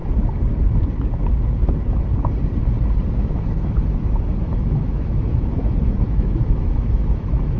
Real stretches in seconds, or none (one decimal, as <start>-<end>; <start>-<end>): 0.0-3.2